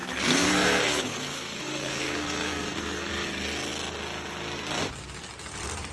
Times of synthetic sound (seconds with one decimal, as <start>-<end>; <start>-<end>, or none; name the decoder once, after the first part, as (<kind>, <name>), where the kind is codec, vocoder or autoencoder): 0.0-3.1 (codec, SNAC)